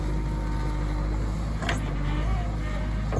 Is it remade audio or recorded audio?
recorded